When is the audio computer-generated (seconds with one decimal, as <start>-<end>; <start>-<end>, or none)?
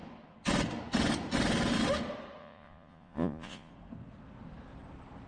2.4-3.7